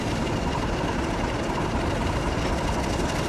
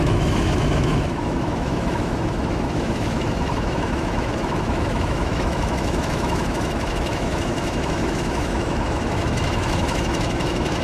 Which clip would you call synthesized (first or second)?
second